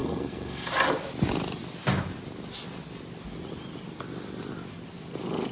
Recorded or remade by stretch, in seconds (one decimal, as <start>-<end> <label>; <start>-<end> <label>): 0.0-0.7 remade; 0.7-5.5 recorded